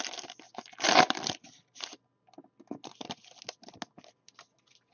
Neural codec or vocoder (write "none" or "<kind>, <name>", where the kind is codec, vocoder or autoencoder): none